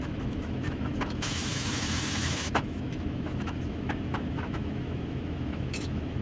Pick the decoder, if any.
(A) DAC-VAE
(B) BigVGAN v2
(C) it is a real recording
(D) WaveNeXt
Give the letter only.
A